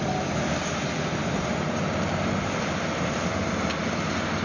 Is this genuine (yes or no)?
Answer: yes